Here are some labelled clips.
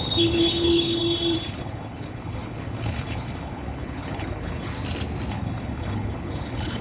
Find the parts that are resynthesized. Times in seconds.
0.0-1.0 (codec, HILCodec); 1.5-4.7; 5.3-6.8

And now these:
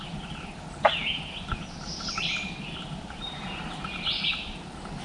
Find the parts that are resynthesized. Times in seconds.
none

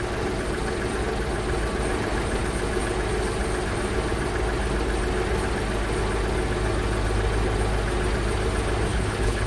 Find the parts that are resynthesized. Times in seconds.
8.9-9.5 (codec, HILCodec)

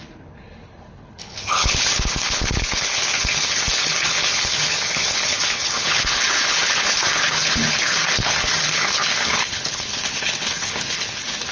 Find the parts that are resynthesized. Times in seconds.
0.0-11.5 (codec, HILCodec)

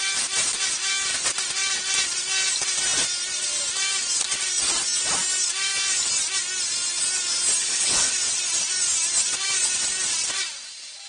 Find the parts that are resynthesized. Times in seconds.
7.6-8.1 (codec, HILCodec)

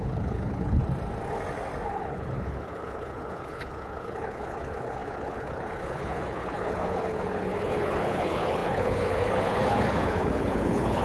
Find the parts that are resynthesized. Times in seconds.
0.0-0.8 (codec, HILCodec); 1.9-11.0

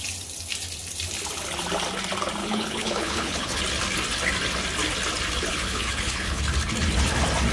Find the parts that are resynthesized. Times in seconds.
2.4-3.6 (codec, HILCodec); 5.5-6.4